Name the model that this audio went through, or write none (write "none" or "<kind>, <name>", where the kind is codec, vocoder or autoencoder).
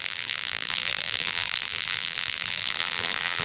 vocoder, BigVGAN v2